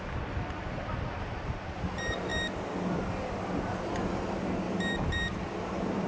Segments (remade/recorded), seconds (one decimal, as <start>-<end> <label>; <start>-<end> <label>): 0.0-6.1 recorded